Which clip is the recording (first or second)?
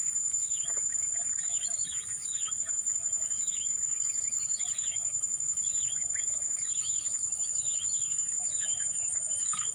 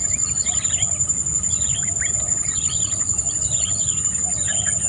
second